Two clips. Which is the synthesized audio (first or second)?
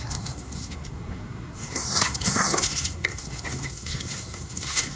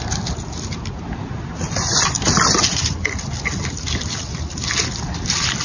first